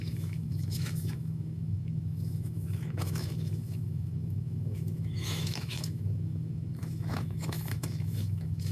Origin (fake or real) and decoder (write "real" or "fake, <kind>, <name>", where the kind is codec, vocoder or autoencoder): fake, autoencoder, DAC-VAE